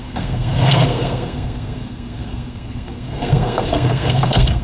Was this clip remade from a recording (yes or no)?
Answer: yes